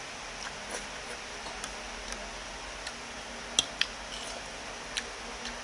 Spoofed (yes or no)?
no